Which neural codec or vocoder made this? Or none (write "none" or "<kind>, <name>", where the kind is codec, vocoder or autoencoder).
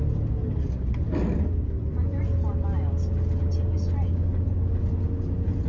none